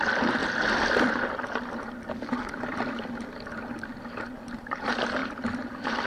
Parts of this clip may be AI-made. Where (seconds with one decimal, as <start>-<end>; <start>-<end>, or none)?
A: 0.0-0.4; 4.1-6.1